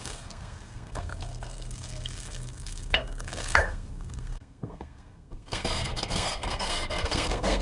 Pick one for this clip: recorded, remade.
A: remade